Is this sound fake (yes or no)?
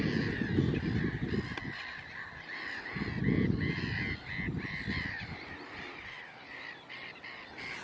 no